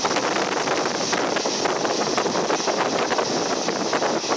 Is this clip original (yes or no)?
yes